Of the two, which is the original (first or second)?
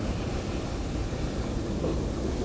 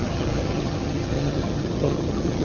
first